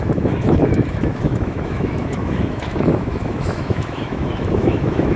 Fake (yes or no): yes